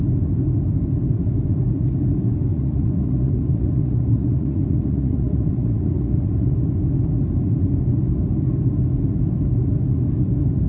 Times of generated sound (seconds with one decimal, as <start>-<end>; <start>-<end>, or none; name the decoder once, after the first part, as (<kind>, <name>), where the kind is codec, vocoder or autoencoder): 2.5-6.5 (vocoder, Vocos)